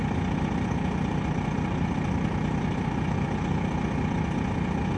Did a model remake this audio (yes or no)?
no